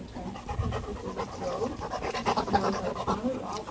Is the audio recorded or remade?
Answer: recorded